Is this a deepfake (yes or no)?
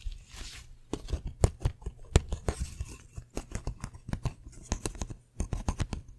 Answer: no